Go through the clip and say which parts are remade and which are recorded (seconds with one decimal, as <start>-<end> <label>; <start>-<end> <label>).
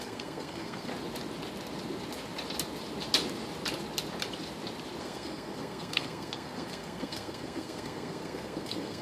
0.0-0.9 remade; 0.9-5.0 recorded; 5.0-9.0 remade